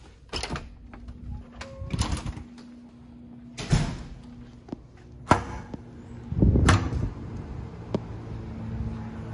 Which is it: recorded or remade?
recorded